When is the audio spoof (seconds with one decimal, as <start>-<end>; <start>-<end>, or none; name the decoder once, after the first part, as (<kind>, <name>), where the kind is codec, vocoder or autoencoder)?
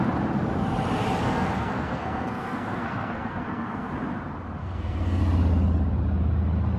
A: 1.2-3.9 (codec, SNAC); 4.6-5.2